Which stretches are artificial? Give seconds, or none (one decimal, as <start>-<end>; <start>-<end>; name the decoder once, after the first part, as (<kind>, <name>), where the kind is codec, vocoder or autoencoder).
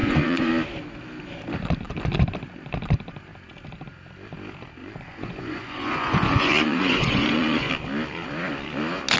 0.0-0.5 (vocoder, Vocos); 4.8-7.7